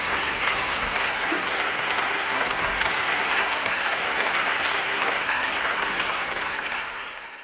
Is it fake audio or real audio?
fake